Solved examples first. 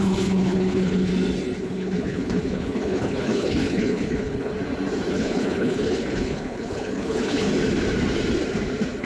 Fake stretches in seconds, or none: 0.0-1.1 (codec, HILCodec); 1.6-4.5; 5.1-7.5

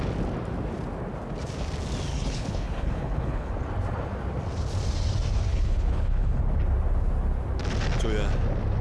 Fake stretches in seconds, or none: 2.1-3.5 (codec, HILCodec); 5.5-6.4